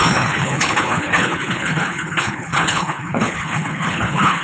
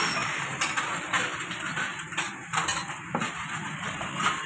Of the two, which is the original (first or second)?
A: second